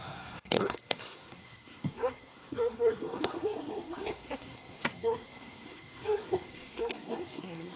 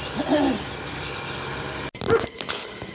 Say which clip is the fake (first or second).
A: first